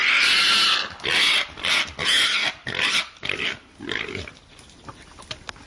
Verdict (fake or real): real